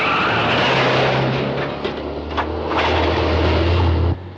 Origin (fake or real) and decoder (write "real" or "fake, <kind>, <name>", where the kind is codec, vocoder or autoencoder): real